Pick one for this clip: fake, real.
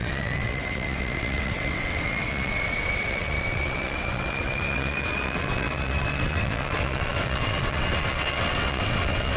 fake